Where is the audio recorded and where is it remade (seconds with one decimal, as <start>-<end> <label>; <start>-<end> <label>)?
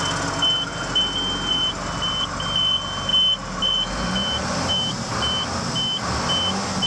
0.0-6.9 recorded